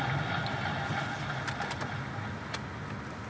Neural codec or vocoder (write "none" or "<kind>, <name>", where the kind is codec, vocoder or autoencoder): none